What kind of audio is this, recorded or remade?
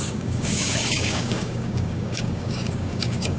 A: remade